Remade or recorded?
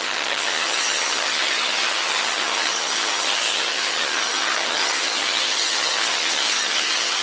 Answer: remade